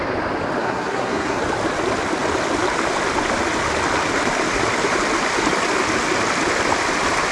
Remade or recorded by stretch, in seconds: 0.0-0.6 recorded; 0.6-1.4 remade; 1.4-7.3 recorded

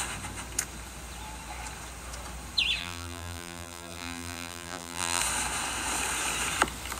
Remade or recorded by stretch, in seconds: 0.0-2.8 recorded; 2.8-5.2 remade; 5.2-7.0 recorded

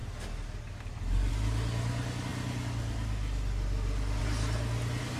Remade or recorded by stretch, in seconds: 0.0-5.2 recorded

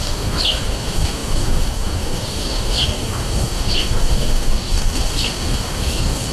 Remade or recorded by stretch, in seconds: 0.0-6.3 remade